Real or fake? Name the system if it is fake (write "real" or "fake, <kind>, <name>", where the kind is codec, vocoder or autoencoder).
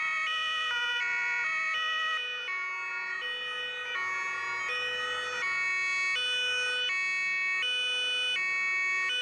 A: real